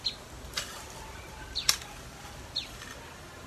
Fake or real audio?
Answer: real